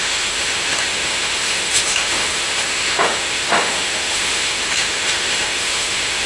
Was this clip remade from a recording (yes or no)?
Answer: yes